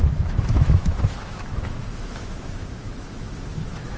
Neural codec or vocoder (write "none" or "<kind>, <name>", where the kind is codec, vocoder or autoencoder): autoencoder, DAC-VAE